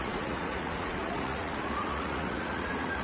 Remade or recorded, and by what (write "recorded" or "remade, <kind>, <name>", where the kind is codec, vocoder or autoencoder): remade, vocoder, Vocos